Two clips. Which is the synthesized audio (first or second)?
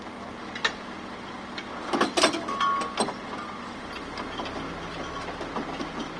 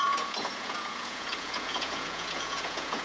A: second